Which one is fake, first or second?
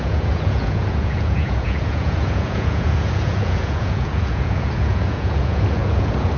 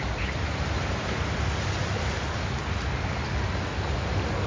first